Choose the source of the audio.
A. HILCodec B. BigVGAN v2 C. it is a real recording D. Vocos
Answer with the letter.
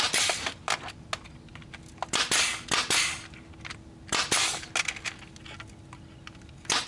C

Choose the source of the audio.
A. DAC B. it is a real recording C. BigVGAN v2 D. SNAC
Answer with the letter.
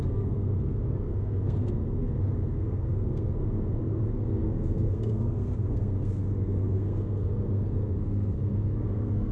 D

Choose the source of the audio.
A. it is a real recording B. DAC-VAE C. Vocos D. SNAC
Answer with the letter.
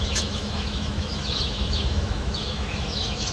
B